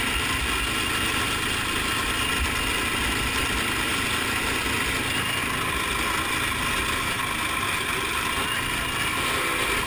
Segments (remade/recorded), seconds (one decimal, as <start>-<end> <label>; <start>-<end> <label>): 0.0-9.9 recorded